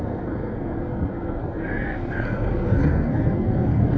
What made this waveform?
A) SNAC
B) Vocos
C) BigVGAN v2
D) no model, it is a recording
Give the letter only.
A